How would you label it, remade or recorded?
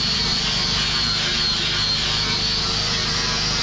recorded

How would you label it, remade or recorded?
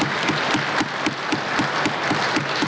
recorded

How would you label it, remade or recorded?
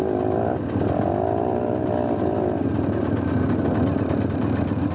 recorded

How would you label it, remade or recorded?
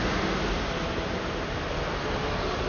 recorded